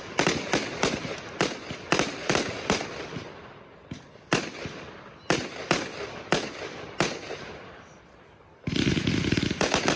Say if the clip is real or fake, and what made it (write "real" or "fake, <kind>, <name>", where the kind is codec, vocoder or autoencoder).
fake, vocoder, BigVGAN v2